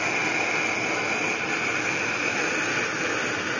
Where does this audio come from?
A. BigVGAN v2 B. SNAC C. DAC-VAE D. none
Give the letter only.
D